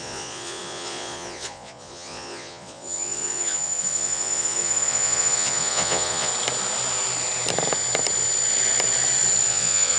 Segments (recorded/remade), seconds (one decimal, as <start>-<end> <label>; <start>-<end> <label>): 0.0-6.3 remade; 6.3-9.5 recorded; 9.5-10.0 remade